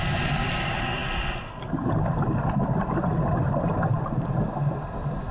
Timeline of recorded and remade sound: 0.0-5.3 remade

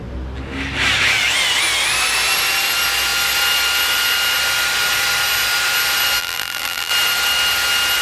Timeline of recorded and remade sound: 0.0-6.2 recorded; 6.2-6.9 remade; 6.9-8.0 recorded

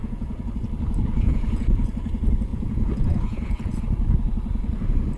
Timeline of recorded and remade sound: 0.0-0.5 remade; 0.5-1.2 recorded; 1.2-1.9 remade; 1.9-2.5 recorded; 2.5-3.8 remade; 3.8-5.2 recorded

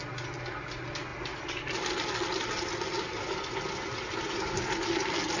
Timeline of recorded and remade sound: 0.0-5.4 recorded

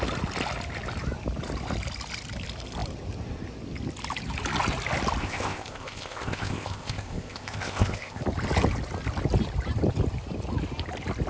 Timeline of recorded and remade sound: 0.0-5.2 recorded; 5.2-8.2 remade; 8.2-11.3 recorded

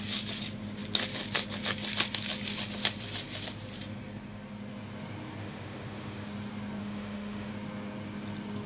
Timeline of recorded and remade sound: 0.0-5.4 recorded; 5.4-6.3 remade; 6.3-6.8 recorded; 6.8-7.5 remade; 7.5-8.7 recorded